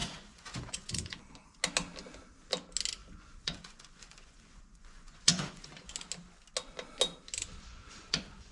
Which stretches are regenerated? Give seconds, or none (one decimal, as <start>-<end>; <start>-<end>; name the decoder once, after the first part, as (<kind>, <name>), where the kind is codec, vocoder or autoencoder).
0.0-1.2 (vocoder, Vocos); 3.0-5.9; 7.7-8.5